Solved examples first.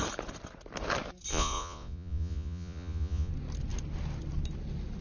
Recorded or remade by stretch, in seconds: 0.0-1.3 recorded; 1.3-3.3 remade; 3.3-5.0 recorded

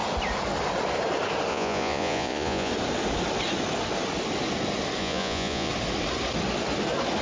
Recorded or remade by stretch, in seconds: 0.0-1.5 recorded; 1.5-2.7 remade; 2.7-5.0 recorded; 5.0-5.7 remade; 5.7-7.2 recorded

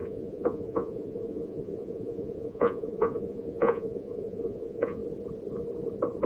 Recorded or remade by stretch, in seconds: 0.0-5.0 remade; 5.0-6.3 recorded

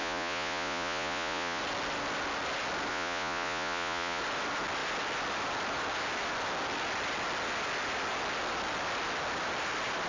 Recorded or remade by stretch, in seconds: 0.0-1.6 remade; 1.6-2.9 recorded; 2.9-4.2 remade; 4.2-10.1 recorded

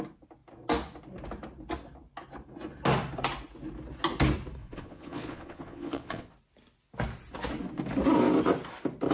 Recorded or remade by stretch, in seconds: 0.0-4.6 recorded; 4.6-6.3 remade; 6.3-9.1 recorded

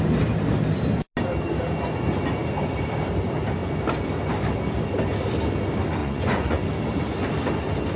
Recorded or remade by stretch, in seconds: 0.0-6.0 recorded; 6.0-6.6 remade; 6.6-8.0 recorded

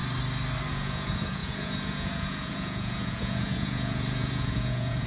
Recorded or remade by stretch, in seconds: 0.0-0.7 recorded; 0.7-5.1 remade

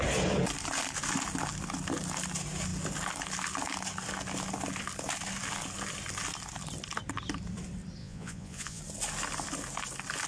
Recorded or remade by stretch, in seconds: 0.0-8.0 recorded; 8.0-8.8 remade; 8.8-10.3 recorded